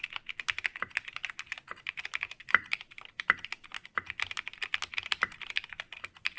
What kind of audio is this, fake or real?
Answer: real